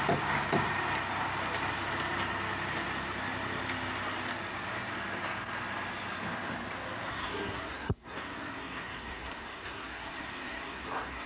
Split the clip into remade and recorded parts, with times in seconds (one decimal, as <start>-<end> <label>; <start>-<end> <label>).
0.0-7.1 recorded; 7.1-11.3 remade